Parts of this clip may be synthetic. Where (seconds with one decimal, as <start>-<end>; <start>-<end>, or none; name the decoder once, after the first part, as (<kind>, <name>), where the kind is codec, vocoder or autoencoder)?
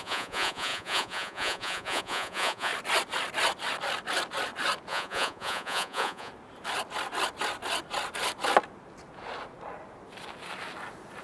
0.0-2.7 (vocoder, Vocos); 4.9-6.3